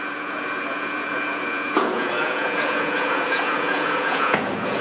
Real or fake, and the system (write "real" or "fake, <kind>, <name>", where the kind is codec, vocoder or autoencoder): fake, vocoder, Vocos